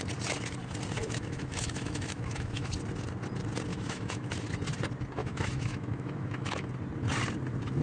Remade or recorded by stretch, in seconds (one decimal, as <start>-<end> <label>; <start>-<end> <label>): 0.0-1.0 recorded; 1.0-2.7 remade; 2.7-3.7 recorded; 3.7-4.3 remade; 4.3-5.2 recorded; 5.2-6.7 remade; 6.7-7.8 recorded